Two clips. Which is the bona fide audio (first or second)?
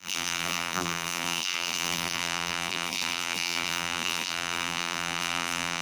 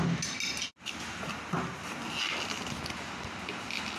second